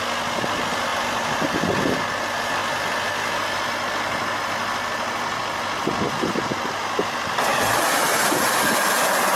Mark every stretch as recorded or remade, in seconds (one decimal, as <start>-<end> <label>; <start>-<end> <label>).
0.0-9.4 recorded